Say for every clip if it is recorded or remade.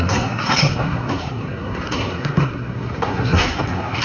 remade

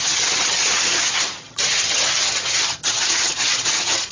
remade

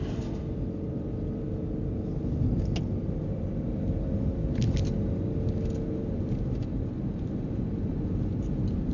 recorded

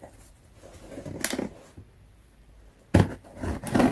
remade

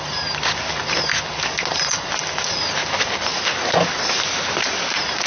recorded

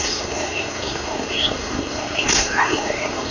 remade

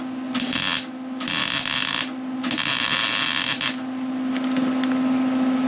recorded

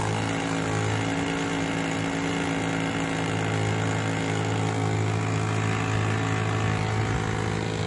recorded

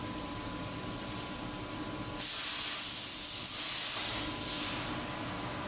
recorded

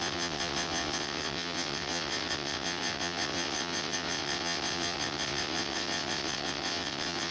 remade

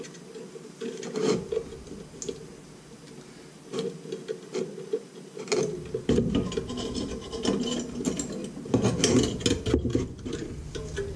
recorded